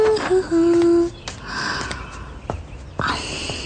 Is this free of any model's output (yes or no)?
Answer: yes